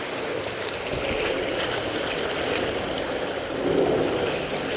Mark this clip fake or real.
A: real